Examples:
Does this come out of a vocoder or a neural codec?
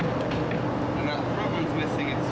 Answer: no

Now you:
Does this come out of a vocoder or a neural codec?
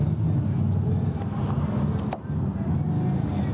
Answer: no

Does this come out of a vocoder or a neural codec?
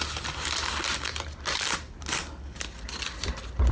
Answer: no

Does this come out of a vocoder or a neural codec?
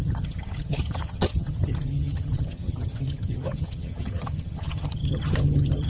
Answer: yes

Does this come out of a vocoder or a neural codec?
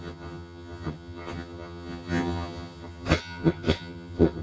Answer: yes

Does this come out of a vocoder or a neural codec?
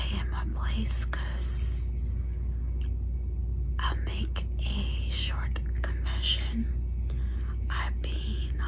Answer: no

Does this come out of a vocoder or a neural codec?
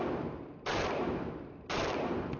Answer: no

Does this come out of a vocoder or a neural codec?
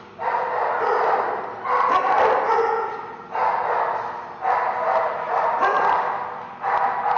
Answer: no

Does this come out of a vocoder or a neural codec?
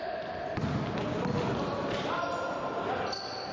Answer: no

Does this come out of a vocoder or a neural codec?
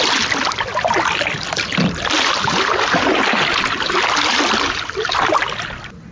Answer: no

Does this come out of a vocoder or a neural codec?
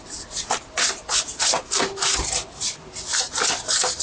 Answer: no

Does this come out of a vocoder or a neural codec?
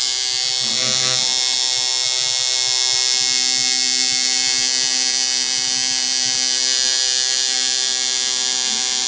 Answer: no